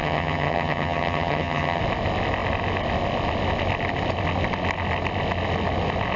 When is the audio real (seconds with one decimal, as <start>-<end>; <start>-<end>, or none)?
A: 1.8-6.2